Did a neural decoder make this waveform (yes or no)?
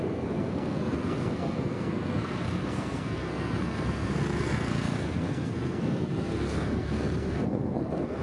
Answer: yes